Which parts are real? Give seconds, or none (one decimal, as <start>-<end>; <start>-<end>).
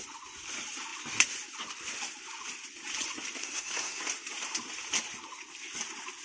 0.0-3.4; 4.0-6.2